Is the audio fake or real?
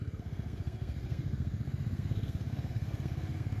fake